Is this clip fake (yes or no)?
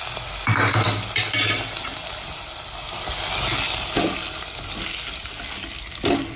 no